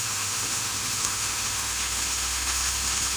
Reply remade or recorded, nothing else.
remade